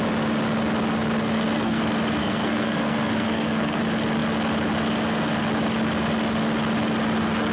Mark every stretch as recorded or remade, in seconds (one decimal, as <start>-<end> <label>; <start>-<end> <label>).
0.0-1.2 recorded; 1.2-1.8 remade; 1.8-2.2 recorded; 2.2-3.8 remade; 3.8-7.5 recorded